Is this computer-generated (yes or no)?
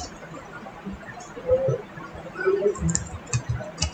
no